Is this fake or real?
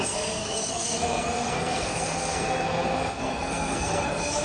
fake